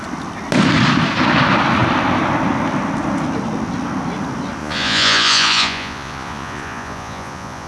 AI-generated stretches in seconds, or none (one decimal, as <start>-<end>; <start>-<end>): 4.6-7.7

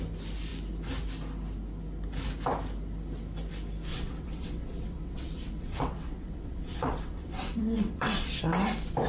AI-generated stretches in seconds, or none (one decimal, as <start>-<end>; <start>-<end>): 3.9-8.4

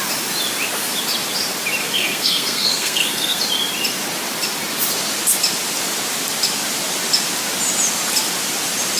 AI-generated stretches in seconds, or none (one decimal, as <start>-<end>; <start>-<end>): 1.8-3.4

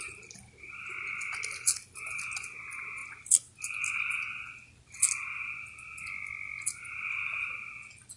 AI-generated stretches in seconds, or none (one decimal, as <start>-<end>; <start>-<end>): none